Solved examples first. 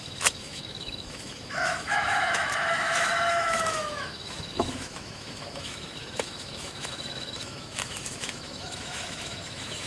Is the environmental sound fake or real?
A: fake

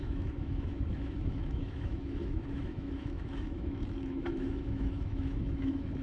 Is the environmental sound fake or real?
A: fake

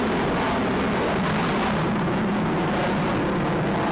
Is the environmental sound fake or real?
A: real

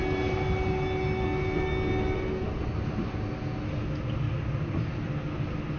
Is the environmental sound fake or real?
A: real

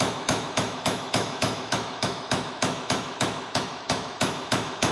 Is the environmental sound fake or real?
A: fake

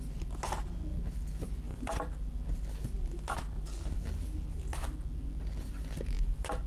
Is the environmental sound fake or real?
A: real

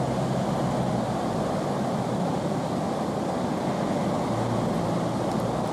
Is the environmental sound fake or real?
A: real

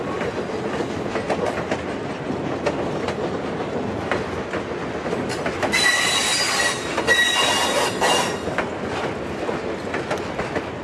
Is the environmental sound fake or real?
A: real